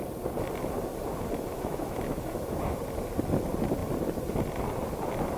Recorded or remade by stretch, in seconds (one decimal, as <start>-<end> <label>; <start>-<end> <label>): 0.0-1.5 recorded; 1.5-2.8 remade; 2.8-5.4 recorded

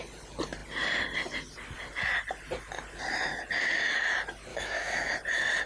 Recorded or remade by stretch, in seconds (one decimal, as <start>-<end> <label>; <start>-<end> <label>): 0.0-4.5 recorded; 4.5-5.1 remade; 5.1-5.7 recorded

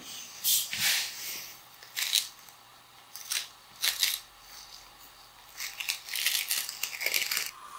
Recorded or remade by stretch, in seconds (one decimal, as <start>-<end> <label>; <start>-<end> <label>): 0.0-7.8 recorded

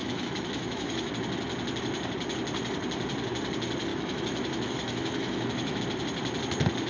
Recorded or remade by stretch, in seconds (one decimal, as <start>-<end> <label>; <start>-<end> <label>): 0.0-1.1 remade; 1.1-3.9 recorded; 3.9-5.8 remade; 5.8-6.9 recorded

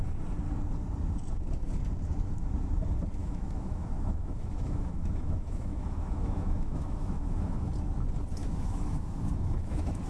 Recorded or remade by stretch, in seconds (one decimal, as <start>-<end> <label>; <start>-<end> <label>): 0.0-3.2 recorded; 3.2-7.7 remade; 7.7-8.4 recorded; 8.4-10.1 remade

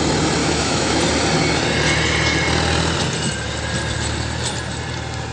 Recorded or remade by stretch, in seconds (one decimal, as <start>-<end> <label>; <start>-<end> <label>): 0.0-0.4 recorded; 0.4-1.0 remade; 1.0-5.3 recorded

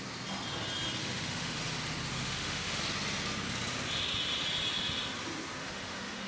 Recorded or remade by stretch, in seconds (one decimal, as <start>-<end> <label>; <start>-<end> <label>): 0.0-1.0 recorded; 1.0-1.6 remade; 1.6-2.1 recorded; 2.1-2.8 remade; 2.8-5.6 recorded; 5.6-6.3 remade

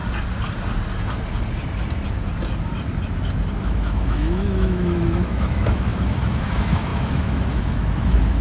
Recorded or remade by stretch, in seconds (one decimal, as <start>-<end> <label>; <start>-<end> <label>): 0.0-3.6 recorded; 3.6-8.4 remade